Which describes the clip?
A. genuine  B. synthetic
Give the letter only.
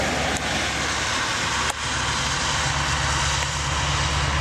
A